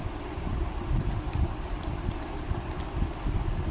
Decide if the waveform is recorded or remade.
recorded